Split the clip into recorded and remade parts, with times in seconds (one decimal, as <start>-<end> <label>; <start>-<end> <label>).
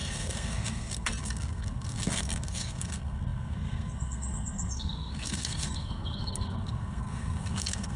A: 0.0-8.0 remade